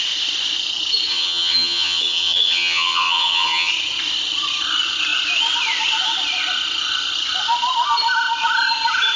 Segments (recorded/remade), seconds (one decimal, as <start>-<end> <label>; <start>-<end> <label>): 0.0-1.1 recorded; 1.1-3.7 remade; 3.7-9.2 recorded